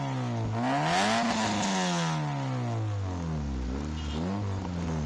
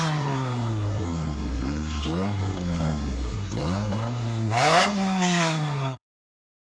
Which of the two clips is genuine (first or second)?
first